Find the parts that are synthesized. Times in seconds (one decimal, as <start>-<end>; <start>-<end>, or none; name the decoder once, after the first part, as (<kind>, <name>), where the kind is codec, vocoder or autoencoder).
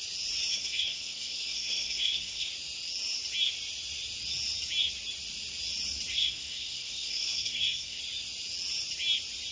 0.5-2.5 (codec, SNAC); 6.1-8.0